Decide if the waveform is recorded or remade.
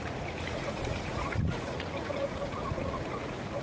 remade